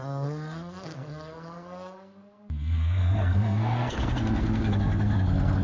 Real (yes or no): no